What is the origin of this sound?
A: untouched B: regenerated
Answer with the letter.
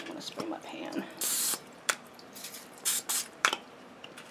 B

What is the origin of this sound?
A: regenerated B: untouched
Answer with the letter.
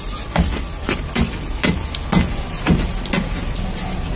B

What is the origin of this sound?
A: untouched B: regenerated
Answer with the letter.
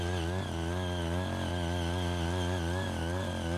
A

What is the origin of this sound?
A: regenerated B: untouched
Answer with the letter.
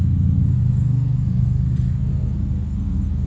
A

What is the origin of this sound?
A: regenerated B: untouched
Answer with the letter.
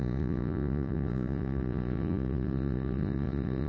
A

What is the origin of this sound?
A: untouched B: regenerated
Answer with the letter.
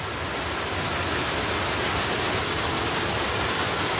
A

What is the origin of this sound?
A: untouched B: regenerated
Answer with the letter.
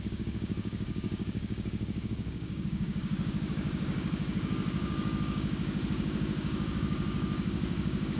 B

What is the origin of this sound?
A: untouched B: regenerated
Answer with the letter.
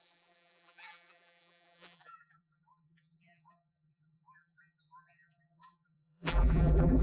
B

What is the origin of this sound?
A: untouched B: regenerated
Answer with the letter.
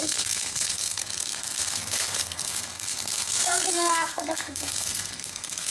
B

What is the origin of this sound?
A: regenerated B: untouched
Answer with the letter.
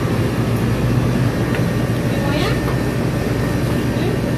B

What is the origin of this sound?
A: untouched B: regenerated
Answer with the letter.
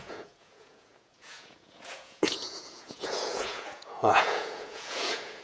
B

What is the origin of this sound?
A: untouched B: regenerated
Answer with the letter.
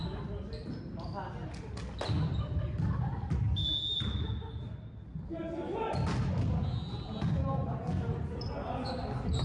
A